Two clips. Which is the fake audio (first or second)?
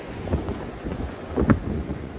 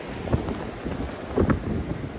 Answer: first